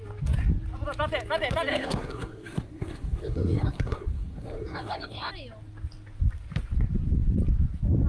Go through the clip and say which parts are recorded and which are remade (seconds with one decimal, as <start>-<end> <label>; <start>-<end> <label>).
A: 0.0-1.7 recorded; 1.7-5.3 remade; 5.3-8.1 recorded